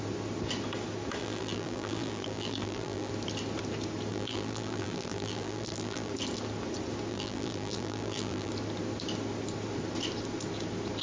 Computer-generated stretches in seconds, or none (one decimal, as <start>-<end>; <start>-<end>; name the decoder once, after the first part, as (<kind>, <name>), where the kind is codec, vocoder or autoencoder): 1.2-3.1 (vocoder, BigVGAN v2); 4.1-6.1; 7.1-8.5